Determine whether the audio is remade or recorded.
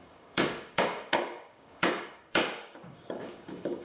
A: remade